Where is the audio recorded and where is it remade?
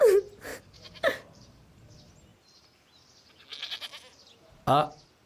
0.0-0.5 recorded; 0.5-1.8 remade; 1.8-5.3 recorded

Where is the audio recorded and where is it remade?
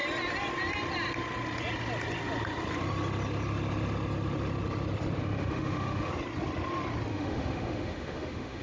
0.0-5.2 recorded; 5.2-6.1 remade; 6.1-7.1 recorded; 7.1-8.6 remade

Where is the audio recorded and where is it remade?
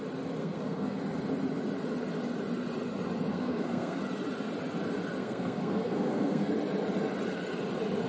0.0-0.4 recorded; 0.4-1.0 remade; 1.0-3.3 recorded; 3.3-4.0 remade; 4.0-5.2 recorded; 5.2-6.5 remade; 6.5-8.1 recorded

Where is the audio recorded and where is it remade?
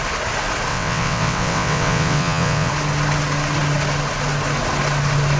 0.0-0.7 recorded; 0.7-2.7 remade; 2.7-5.4 recorded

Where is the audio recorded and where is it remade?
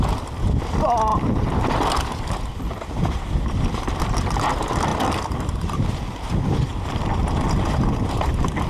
0.0-1.1 recorded; 1.1-2.4 remade; 2.4-4.9 recorded; 4.9-6.0 remade; 6.0-6.7 recorded; 6.7-7.2 remade; 7.2-8.7 recorded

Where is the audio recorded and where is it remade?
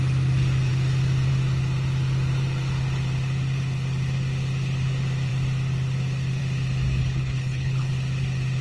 0.0-7.0 recorded; 7.0-7.9 remade; 7.9-8.6 recorded